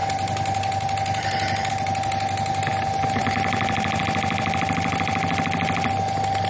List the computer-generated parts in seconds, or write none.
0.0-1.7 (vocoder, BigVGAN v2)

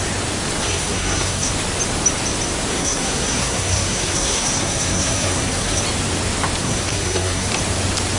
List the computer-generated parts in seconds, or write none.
0.6-1.5 (codec, SNAC); 2.7-5.8; 6.6-7.5

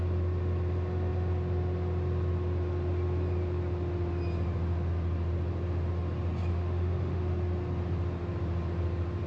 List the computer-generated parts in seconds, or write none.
6.5-7.2 (autoencoder, DAC-VAE)

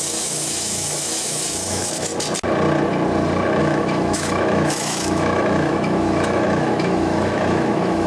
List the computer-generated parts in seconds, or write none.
0.0-2.1 (autoencoder, DAC-VAE); 3.6-8.1

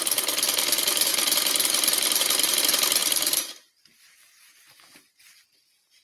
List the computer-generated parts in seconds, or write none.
1.1-2.6 (vocoder, BigVGAN v2); 3.0-4.0

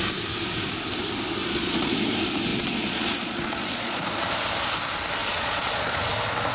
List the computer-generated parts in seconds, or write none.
1.4-2.1 (vocoder, Vocos); 2.5-4.2; 5.2-6.1

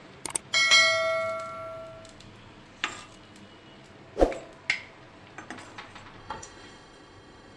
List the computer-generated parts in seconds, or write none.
6.2-7.6 (autoencoder, DAC-VAE)

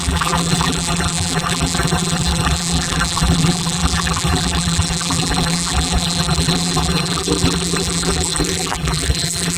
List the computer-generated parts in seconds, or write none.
0.0-9.6 (vocoder, BigVGAN v2)